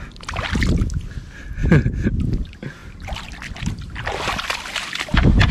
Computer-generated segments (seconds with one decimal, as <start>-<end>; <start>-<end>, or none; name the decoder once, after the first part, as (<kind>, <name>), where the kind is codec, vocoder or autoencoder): none